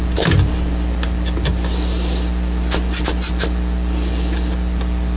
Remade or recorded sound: recorded